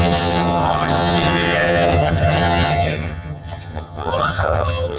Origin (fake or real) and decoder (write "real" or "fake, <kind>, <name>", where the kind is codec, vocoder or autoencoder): fake, vocoder, HiFi-GAN